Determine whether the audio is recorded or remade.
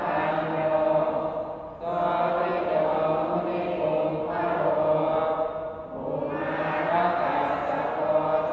recorded